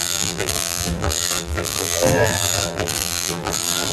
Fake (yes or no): yes